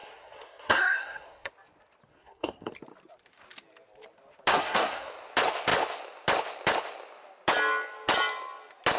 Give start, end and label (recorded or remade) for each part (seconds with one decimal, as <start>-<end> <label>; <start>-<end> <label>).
0.0-1.5 remade; 1.5-2.1 recorded; 2.1-2.7 remade; 2.7-4.5 recorded; 4.5-5.1 remade; 5.1-9.0 recorded